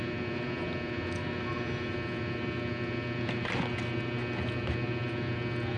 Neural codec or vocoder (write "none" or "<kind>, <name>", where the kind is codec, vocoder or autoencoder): none